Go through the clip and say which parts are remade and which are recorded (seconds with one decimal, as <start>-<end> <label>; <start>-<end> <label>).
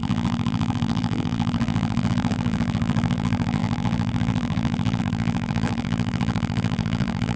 0.0-7.4 remade